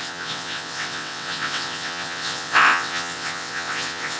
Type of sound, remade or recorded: remade